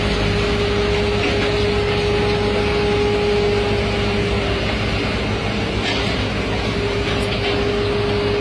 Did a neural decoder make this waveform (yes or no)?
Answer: no